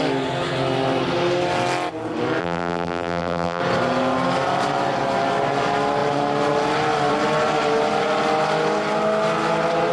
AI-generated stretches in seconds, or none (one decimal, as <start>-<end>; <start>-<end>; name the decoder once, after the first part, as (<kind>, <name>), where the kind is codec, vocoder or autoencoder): 2.4-3.6 (vocoder, BigVGAN v2)